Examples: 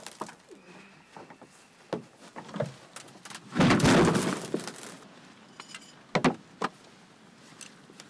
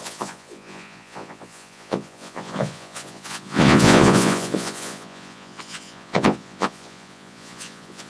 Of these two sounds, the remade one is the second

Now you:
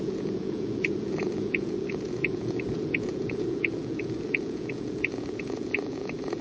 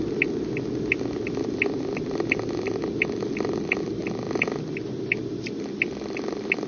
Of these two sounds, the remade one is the first